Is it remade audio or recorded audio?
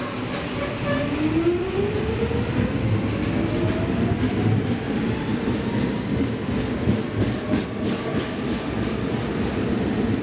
recorded